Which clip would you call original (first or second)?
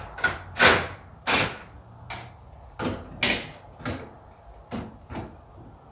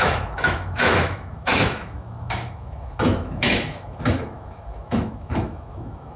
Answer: first